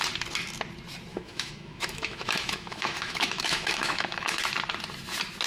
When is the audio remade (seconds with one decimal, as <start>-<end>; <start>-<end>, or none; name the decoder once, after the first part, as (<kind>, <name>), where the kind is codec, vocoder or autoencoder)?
1.1-4.4 (autoencoder, DAC-VAE)